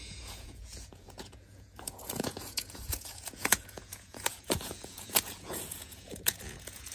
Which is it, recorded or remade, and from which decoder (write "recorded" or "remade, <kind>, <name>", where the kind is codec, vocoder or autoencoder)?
remade, vocoder, Vocos